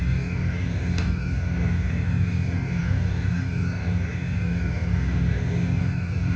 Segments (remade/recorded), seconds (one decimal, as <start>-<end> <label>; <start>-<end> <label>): 0.0-6.4 remade